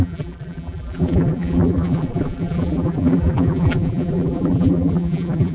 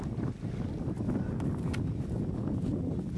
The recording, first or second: second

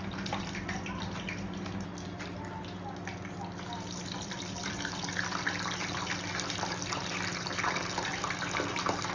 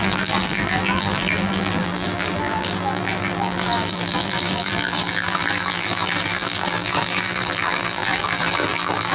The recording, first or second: first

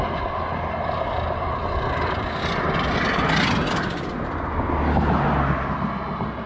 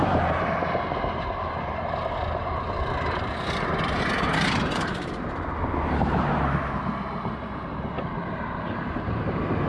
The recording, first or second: first